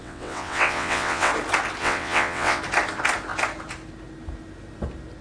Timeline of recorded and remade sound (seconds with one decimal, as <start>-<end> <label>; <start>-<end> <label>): 0.0-1.3 remade; 1.3-1.8 recorded; 1.8-2.6 remade; 2.6-5.2 recorded